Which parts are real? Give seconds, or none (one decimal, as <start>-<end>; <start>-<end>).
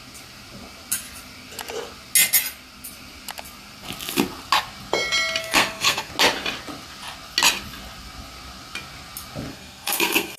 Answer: 0.0-5.4; 6.1-9.5